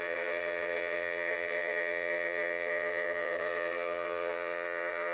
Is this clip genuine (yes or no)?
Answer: no